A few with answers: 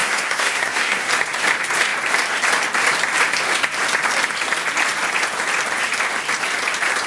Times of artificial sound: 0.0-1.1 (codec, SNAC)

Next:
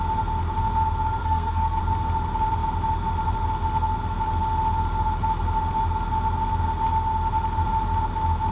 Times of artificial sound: 1.2-1.8 (codec, SNAC)

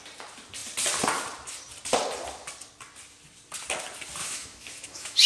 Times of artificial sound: 4.2-5.3 (autoencoder, DAC-VAE)

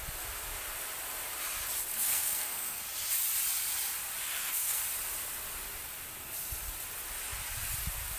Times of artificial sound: 1.9-2.8 (codec, SNAC); 4.3-4.8

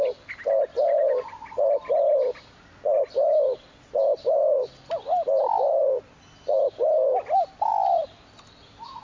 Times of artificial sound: none

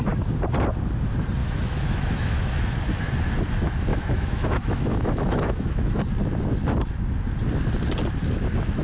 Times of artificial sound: 1.4-2.5 (autoencoder, DAC-VAE); 3.9-6.0

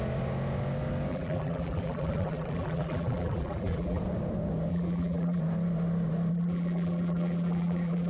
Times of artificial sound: 1.1-4.0 (vocoder, BigVGAN v2); 4.7-5.4; 6.3-8.1

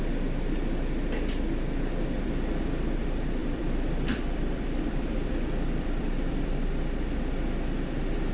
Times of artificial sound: 3.4-6.8 (vocoder, BigVGAN v2)